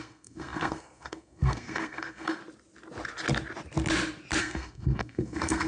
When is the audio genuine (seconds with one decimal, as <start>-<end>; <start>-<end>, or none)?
2.4-4.4